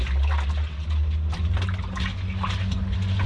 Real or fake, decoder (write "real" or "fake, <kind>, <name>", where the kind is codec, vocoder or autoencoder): real